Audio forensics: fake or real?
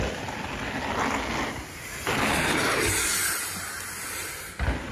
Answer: real